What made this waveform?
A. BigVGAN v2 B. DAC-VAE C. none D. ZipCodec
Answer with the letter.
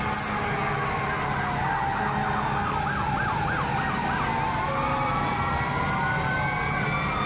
C